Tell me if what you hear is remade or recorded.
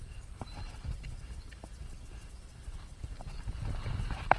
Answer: remade